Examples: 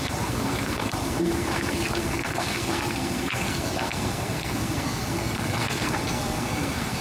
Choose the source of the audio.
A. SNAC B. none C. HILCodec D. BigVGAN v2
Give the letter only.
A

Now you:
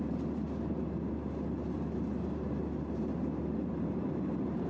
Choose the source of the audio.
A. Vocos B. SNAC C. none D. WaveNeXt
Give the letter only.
C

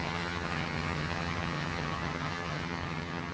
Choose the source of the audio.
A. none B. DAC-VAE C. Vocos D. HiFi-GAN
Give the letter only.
D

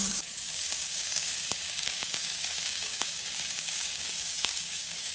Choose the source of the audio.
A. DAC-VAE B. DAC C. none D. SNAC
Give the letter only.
B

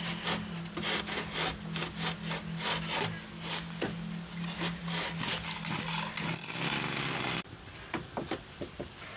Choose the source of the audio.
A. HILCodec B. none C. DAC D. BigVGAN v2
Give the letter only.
B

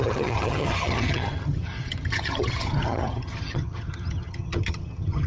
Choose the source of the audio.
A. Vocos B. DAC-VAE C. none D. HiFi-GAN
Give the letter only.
D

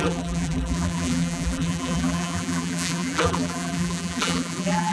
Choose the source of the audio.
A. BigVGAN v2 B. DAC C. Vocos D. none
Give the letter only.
A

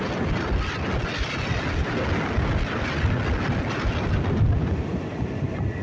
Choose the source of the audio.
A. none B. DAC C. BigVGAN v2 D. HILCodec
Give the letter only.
A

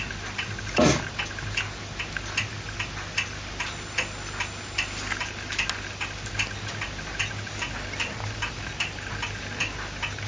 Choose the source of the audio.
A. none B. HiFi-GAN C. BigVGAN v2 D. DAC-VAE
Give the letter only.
A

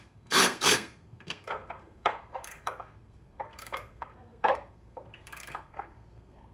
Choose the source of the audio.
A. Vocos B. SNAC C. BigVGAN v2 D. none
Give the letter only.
B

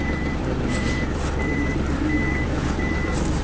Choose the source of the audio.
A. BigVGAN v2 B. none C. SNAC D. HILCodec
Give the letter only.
A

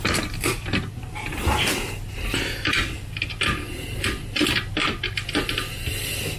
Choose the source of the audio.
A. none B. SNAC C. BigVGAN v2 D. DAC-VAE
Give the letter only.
A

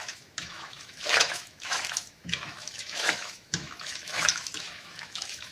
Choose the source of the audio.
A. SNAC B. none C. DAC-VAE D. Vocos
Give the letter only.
C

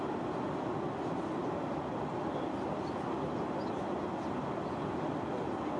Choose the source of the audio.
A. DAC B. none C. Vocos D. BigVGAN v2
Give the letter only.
B